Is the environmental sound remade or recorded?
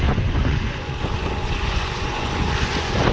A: remade